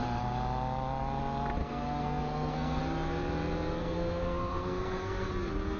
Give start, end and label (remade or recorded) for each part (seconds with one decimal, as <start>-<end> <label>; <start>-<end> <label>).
0.0-1.6 recorded; 1.6-2.8 remade; 2.8-3.8 recorded; 3.8-5.3 remade; 5.3-5.8 recorded